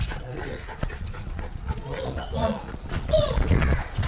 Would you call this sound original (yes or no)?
no